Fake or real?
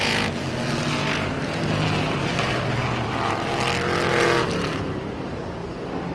real